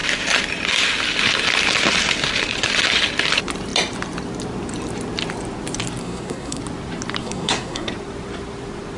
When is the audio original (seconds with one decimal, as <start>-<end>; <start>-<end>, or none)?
0.0-6.0; 6.6-7.2; 7.9-9.0